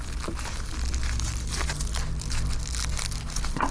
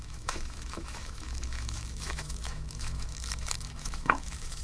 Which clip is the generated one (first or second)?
second